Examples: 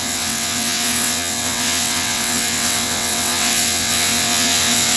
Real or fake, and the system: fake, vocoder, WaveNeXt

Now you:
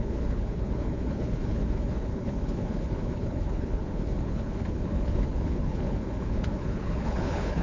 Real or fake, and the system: fake, codec, HILCodec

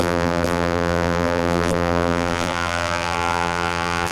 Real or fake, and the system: fake, vocoder, BigVGAN v2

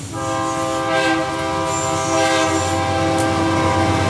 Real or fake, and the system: real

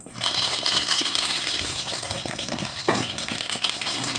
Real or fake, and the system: fake, codec, SNAC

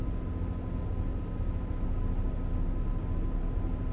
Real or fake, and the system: real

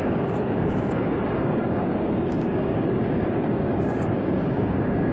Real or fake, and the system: fake, codec, DAC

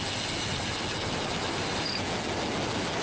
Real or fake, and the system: real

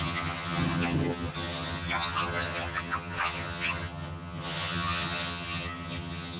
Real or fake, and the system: fake, vocoder, HiFi-GAN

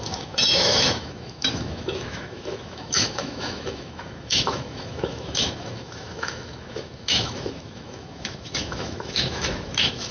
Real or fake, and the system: fake, autoencoder, DAC-VAE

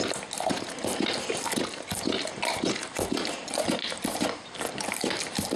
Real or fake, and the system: real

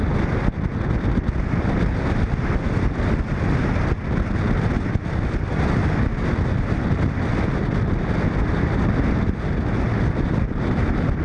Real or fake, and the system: real